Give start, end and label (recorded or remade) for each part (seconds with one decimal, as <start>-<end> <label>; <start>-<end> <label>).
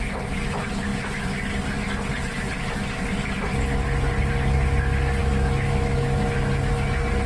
0.0-5.2 recorded; 5.2-6.2 remade; 6.2-7.3 recorded